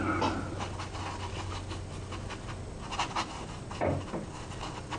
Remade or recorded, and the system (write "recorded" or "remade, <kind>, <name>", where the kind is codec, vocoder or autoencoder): recorded